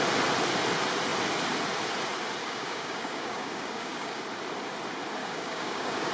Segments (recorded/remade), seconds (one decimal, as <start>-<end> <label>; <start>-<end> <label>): 0.0-2.4 recorded; 2.4-4.2 remade; 4.2-5.2 recorded; 5.2-6.1 remade